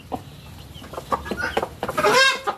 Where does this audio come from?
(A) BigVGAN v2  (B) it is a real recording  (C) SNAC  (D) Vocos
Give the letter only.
B